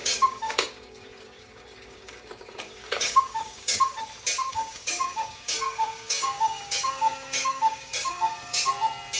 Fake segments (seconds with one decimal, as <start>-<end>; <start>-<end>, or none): 0.0-4.0; 4.5-8.7